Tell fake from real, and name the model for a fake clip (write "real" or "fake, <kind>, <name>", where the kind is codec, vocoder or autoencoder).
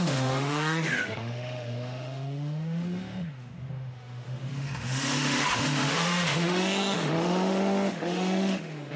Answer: fake, autoencoder, DAC-VAE